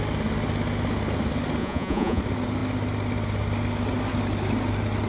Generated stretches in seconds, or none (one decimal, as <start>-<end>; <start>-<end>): 1.6-2.2